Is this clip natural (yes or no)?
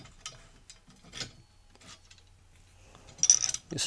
yes